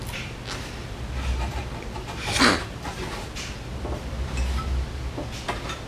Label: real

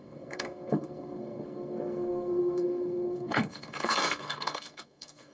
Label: fake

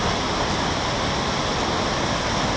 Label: real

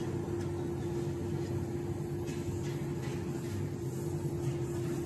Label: real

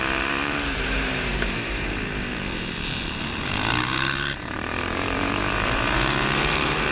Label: fake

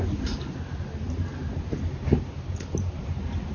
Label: real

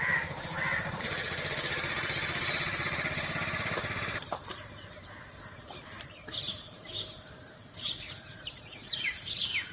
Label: fake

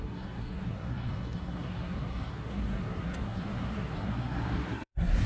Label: fake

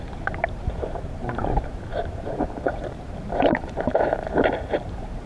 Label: fake